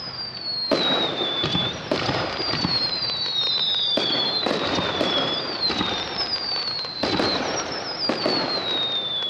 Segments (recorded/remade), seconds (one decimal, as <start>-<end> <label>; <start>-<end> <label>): 0.0-1.1 recorded; 1.1-5.7 remade; 5.7-9.3 recorded